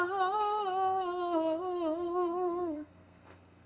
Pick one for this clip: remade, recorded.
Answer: remade